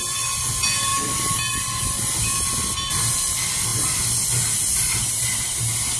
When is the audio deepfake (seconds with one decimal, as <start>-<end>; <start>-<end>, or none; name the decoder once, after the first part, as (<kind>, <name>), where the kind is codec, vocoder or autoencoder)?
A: none